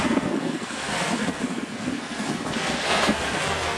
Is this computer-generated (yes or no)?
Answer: yes